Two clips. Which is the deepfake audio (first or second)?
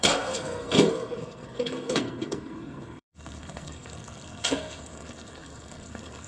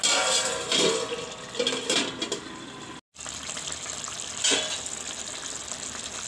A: first